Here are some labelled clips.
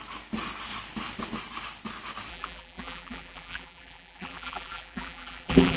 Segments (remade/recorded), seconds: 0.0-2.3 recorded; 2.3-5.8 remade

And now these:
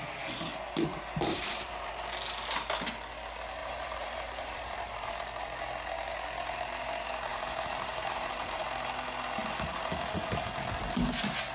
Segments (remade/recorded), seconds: 0.0-0.9 recorded; 0.9-1.9 remade; 1.9-3.6 recorded; 3.6-5.1 remade; 5.1-7.3 recorded; 7.3-8.6 remade; 8.6-11.5 recorded

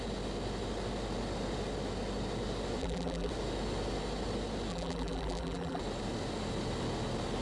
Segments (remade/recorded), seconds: 0.0-2.8 recorded; 2.8-3.3 remade; 3.3-4.7 recorded; 4.7-5.8 remade; 5.8-7.4 recorded

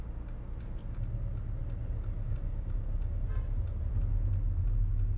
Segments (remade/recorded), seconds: 0.0-5.2 recorded

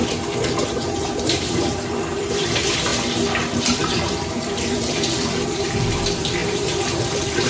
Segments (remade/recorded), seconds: 0.0-0.7 recorded; 0.7-2.9 remade; 2.9-3.6 recorded; 3.6-7.5 remade

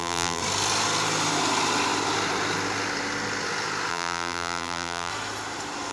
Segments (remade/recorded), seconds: 0.0-0.4 remade; 0.4-3.9 recorded; 3.9-5.1 remade; 5.1-5.9 recorded

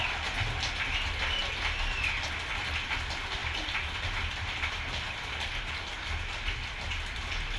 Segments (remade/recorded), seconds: 0.0-7.6 recorded

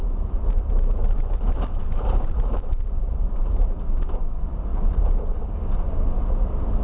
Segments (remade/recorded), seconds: 0.0-4.0 remade; 4.0-4.7 recorded; 4.7-5.3 remade; 5.3-6.8 recorded